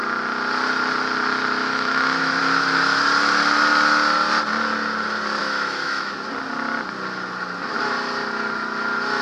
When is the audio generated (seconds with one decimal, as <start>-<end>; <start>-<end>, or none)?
1.6-2.4; 5.4-6.1